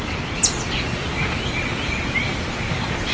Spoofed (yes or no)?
no